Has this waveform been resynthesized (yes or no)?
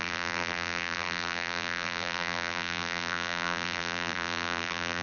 yes